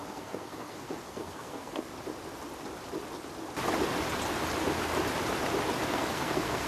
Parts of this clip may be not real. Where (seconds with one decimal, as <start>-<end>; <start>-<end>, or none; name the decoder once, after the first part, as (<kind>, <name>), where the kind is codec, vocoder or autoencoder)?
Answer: 0.0-1.9 (codec, SNAC); 5.9-6.7